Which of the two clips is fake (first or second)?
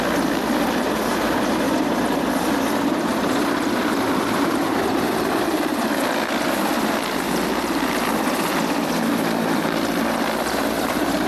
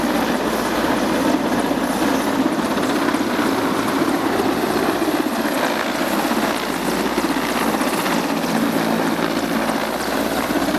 first